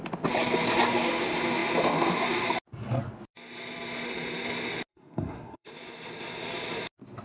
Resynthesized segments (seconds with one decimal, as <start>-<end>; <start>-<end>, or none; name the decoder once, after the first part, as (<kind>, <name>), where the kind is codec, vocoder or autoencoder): 4.9-5.7 (codec, SNAC)